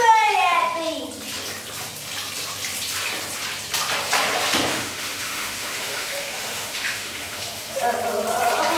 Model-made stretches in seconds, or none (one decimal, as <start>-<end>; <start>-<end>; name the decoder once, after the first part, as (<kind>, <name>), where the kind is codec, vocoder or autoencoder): 4.7-7.8 (autoencoder, DAC-VAE)